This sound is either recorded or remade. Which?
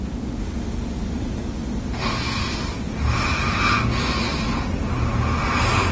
recorded